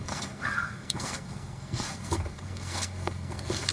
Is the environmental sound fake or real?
fake